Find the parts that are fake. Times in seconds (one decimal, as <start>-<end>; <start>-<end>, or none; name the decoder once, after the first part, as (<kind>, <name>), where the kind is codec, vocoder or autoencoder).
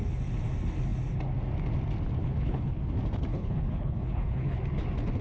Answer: 2.2-2.8 (codec, HILCodec); 3.3-4.6